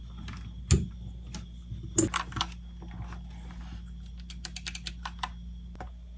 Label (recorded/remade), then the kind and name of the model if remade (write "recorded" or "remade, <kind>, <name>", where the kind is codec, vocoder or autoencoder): recorded